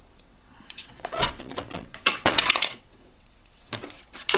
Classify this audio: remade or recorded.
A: remade